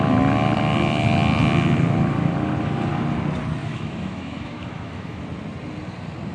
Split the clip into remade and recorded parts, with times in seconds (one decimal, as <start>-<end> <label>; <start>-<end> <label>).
0.0-3.6 recorded; 3.6-5.2 remade; 5.2-6.3 recorded